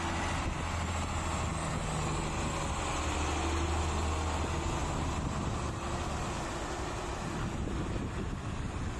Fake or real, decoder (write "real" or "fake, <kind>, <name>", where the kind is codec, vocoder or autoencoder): real